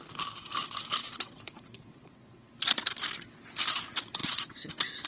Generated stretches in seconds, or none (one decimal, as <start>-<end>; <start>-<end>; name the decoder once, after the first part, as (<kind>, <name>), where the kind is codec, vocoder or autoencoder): 1.0-2.5 (vocoder, WaveNeXt); 4.2-5.1